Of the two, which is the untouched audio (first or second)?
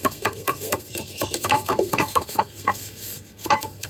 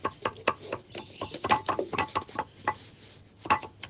second